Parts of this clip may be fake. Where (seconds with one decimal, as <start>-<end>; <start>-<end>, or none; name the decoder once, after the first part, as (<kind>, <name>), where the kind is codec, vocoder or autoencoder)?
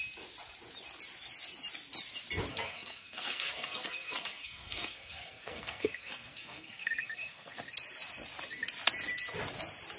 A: 2.5-7.6 (codec, SNAC)